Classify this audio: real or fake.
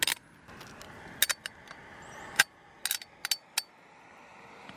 real